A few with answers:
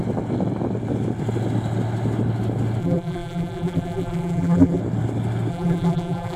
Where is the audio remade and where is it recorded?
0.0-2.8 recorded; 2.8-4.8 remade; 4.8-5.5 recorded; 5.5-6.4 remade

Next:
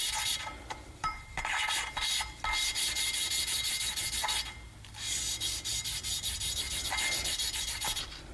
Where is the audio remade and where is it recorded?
0.0-1.9 remade; 1.9-8.3 recorded

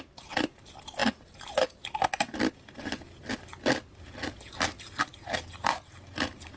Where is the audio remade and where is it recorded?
0.0-6.6 recorded

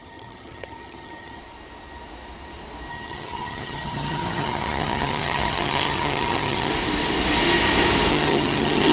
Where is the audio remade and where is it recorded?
0.0-1.4 remade; 1.4-2.9 recorded; 2.9-6.7 remade; 6.7-8.1 recorded; 8.1-8.9 remade

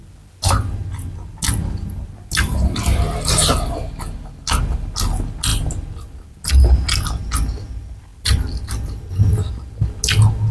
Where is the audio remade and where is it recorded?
0.0-10.5 recorded

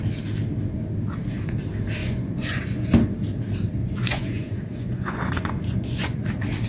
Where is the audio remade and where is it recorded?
0.0-2.0 recorded; 2.0-2.9 remade; 2.9-3.8 recorded; 3.8-6.2 remade; 6.2-6.7 recorded